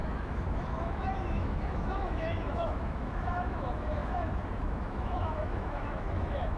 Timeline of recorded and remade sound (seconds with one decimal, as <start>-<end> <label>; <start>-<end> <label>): 0.0-6.6 remade